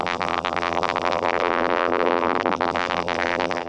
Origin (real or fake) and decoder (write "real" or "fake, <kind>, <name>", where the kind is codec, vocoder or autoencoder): fake, vocoder, BigVGAN v2